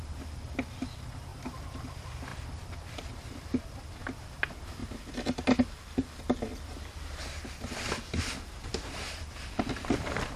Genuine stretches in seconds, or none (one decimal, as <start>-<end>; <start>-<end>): 0.0-1.3; 1.9-2.3; 3.6-4.8; 5.8-6.5; 9.6-10.4